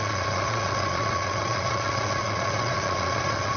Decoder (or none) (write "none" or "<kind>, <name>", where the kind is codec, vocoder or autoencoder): vocoder, Vocos